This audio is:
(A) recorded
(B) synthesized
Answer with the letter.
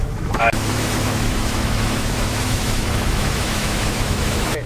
B